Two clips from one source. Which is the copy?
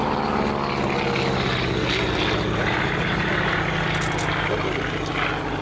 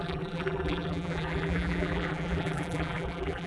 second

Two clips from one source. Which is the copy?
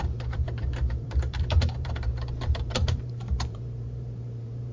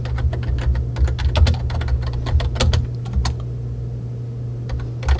first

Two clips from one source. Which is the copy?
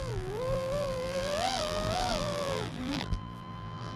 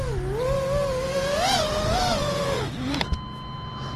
first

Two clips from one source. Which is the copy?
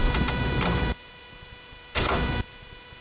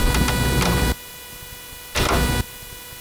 first